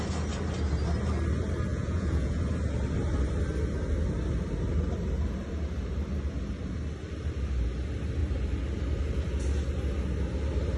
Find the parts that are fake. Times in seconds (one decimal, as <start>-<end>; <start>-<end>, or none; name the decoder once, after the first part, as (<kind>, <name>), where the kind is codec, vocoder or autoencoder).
1.7-2.4 (vocoder, Vocos)